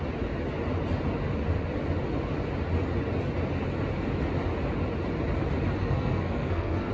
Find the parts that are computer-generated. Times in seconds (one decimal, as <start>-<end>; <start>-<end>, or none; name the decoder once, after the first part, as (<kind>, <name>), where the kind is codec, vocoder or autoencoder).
5.8-6.9 (codec, SNAC)